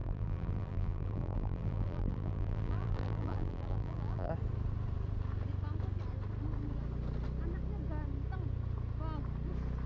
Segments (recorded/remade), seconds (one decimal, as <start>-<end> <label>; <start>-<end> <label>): 0.0-4.3 remade; 4.3-9.9 recorded